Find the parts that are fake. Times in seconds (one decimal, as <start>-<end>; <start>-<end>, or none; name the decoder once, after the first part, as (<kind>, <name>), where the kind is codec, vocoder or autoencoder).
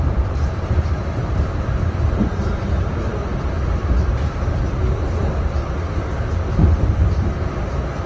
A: 0.0-3.1 (vocoder, BigVGAN v2); 3.7-8.1